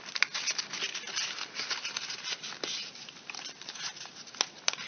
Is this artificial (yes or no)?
no